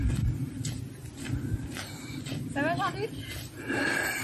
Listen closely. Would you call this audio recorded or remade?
recorded